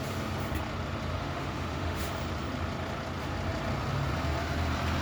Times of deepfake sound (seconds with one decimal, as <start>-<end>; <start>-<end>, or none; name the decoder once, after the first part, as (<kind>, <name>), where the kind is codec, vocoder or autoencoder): 1.1-2.1 (autoencoder, DAC-VAE)